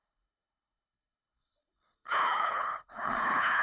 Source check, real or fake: fake